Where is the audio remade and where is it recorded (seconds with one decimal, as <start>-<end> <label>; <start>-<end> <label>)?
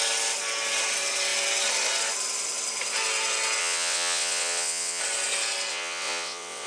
0.0-3.6 recorded; 3.6-5.0 remade; 5.0-5.7 recorded; 5.7-6.7 remade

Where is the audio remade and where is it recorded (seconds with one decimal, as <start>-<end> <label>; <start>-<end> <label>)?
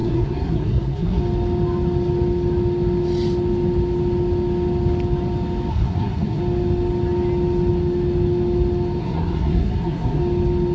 0.0-1.2 remade; 1.2-5.7 recorded; 5.7-6.4 remade; 6.4-9.0 recorded; 9.0-10.2 remade; 10.2-10.7 recorded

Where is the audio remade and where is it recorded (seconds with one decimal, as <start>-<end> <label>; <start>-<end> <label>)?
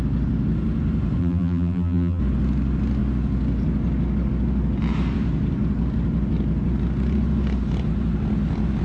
0.0-1.2 recorded; 1.2-2.2 remade; 2.2-8.8 recorded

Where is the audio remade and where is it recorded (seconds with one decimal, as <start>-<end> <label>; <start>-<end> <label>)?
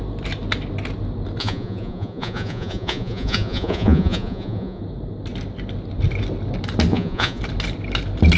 0.0-1.4 recorded; 1.4-4.8 remade; 4.8-6.9 recorded; 6.9-7.4 remade; 7.4-8.4 recorded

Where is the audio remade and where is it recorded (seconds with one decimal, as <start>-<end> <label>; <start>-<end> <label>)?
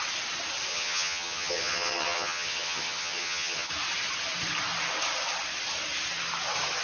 0.0-0.7 recorded; 0.7-3.7 remade; 3.7-6.8 recorded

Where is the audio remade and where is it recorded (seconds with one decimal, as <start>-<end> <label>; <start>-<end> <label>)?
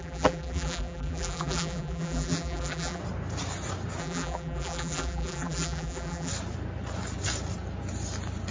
0.0-3.0 remade; 3.0-4.0 recorded; 4.0-6.3 remade; 6.3-8.5 recorded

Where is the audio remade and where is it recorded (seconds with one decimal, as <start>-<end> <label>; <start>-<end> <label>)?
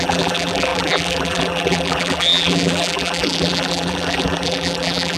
0.0-5.2 remade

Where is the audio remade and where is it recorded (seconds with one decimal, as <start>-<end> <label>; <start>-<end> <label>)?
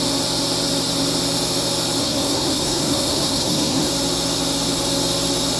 0.0-2.0 recorded; 2.0-3.9 remade; 3.9-5.6 recorded